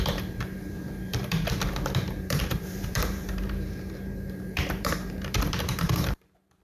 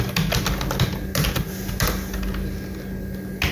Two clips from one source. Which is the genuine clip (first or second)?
second